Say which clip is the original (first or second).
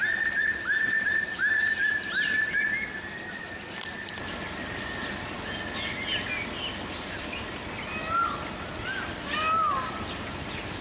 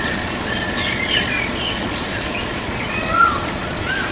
first